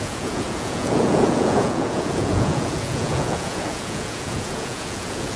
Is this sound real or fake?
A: fake